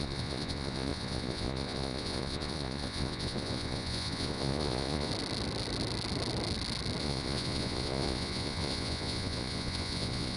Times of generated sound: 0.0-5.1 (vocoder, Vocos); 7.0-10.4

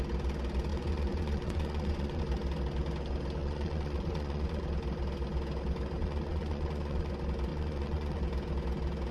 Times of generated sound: 0.7-2.2 (vocoder, Vocos); 3.4-4.6; 6.0-7.1; 7.5-8.2

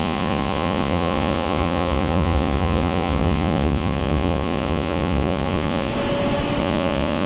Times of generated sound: 0.0-5.9 (vocoder, Vocos); 6.6-7.3

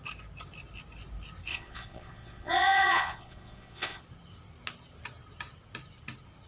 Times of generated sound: 1.5-4.0 (vocoder, Vocos)

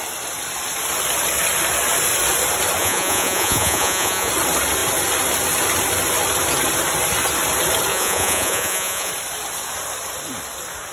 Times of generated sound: 2.8-4.3 (vocoder, Vocos); 7.9-9.1

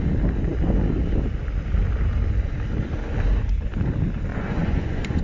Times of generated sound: 4.3-5.2 (vocoder, Vocos)

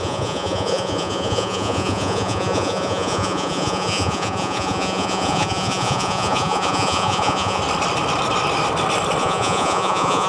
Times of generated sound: 0.0-7.6 (vocoder, Vocos); 9.2-10.3